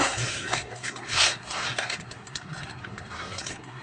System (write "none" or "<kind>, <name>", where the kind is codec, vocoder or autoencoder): codec, SNAC